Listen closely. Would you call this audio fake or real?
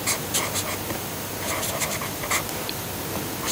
real